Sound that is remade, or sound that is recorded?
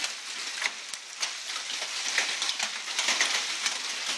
recorded